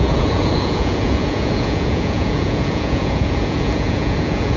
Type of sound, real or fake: fake